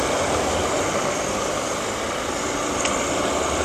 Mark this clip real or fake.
real